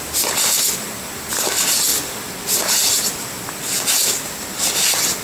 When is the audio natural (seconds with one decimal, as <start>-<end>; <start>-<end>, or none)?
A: 0.0-5.2